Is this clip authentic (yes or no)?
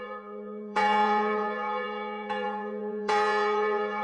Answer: no